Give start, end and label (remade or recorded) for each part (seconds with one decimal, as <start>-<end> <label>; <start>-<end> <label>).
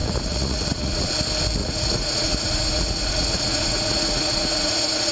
0.0-1.1 remade; 1.1-1.6 recorded; 1.6-5.1 remade